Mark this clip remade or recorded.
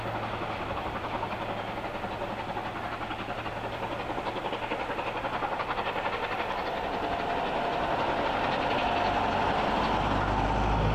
recorded